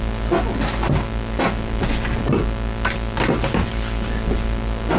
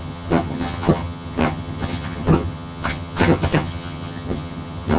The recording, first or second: first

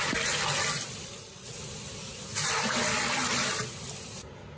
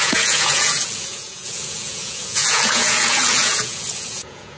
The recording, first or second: first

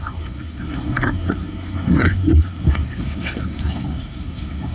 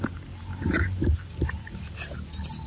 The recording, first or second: second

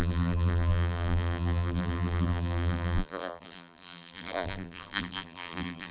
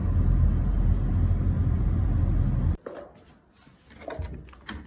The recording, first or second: second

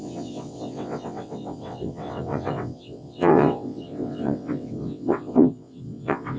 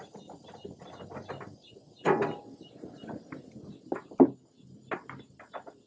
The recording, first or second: second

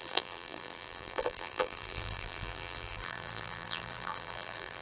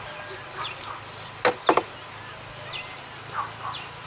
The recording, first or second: second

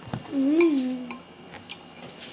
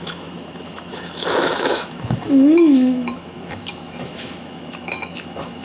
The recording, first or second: first